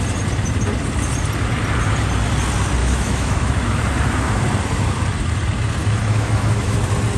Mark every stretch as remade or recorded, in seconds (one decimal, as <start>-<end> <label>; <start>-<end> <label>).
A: 0.0-2.8 recorded; 2.8-3.8 remade; 3.8-5.8 recorded; 5.8-6.8 remade; 6.8-7.2 recorded